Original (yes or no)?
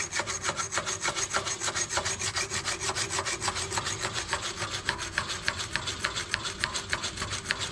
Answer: yes